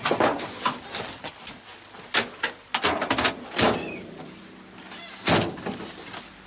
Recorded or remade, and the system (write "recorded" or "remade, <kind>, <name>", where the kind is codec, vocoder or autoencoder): recorded